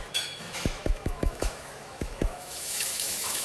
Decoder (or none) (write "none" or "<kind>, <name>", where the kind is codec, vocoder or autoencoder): autoencoder, DAC-VAE